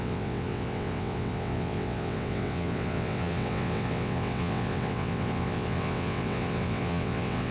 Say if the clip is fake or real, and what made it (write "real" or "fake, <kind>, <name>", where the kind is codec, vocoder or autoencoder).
fake, vocoder, WaveNeXt